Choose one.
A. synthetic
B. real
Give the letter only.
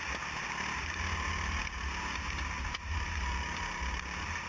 B